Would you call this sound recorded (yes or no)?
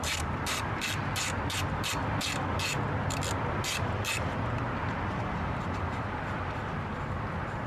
yes